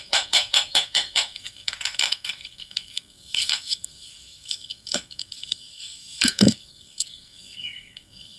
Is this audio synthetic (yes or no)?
yes